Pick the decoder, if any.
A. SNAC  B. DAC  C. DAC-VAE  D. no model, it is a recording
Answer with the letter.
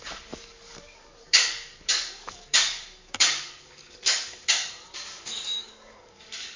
B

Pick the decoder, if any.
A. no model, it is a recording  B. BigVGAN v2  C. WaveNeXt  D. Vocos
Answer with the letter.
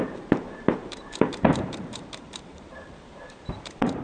B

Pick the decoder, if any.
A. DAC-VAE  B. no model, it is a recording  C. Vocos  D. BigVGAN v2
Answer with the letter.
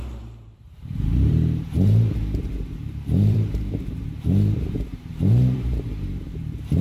D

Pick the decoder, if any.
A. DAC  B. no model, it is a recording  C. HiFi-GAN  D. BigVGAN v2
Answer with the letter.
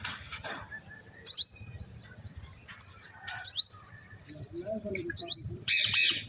D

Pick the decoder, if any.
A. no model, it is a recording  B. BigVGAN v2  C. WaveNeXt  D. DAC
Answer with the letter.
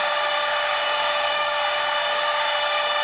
D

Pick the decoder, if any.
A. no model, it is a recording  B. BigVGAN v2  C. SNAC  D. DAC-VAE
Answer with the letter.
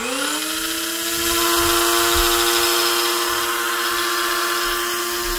A